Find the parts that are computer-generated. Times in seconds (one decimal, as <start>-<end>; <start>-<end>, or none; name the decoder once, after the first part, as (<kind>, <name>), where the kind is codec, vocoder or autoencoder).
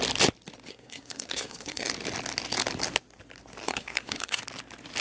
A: 0.7-1.9 (codec, SNAC); 3.6-4.4